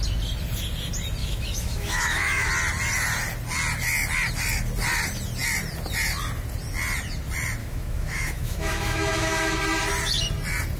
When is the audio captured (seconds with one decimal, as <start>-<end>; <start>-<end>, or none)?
0.0-1.2; 2.5-7.6; 9.6-10.8